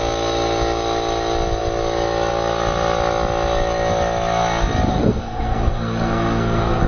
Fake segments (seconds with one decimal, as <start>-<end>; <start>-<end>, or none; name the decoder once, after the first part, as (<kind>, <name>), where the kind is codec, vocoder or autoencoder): 4.9-6.9 (codec, SNAC)